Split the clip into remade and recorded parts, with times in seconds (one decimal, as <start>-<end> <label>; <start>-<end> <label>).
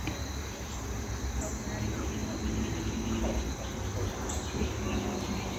0.0-5.6 recorded